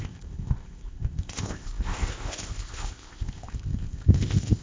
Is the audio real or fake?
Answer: fake